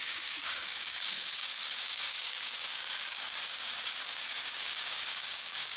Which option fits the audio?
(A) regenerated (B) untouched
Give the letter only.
A